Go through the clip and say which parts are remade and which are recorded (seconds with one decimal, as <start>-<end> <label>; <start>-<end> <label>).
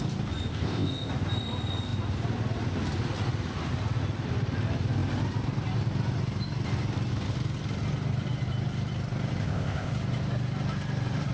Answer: 0.0-0.5 recorded; 0.5-1.1 remade; 1.1-9.4 recorded; 9.4-9.9 remade; 9.9-11.3 recorded